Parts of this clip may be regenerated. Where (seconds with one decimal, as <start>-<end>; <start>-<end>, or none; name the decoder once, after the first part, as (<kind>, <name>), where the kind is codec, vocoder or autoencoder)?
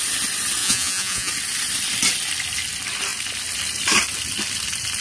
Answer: 0.6-1.3 (vocoder, Vocos)